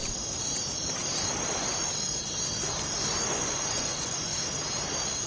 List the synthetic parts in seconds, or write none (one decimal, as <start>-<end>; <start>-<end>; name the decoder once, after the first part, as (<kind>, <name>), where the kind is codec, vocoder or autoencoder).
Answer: 3.2-4.3 (vocoder, Vocos)